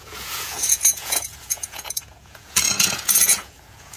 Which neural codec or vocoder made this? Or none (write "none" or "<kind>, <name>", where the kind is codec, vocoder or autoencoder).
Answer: vocoder, Vocos